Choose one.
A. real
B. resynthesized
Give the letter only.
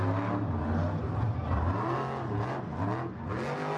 A